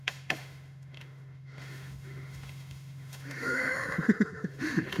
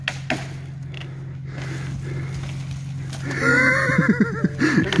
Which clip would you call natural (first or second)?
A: second